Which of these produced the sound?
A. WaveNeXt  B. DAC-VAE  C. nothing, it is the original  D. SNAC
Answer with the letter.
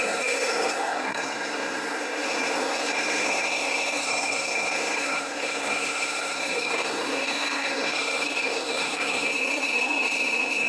D